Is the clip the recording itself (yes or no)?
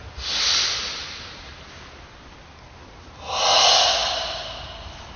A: yes